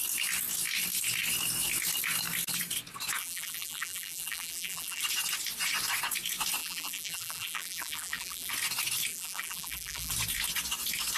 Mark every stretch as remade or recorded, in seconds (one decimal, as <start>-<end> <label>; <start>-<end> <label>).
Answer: 0.0-3.2 recorded; 3.2-5.0 remade; 5.0-6.6 recorded; 6.6-8.5 remade; 8.5-9.1 recorded; 9.1-10.1 remade; 10.1-11.2 recorded